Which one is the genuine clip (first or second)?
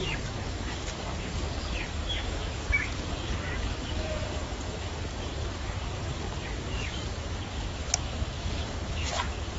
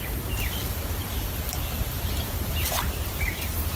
second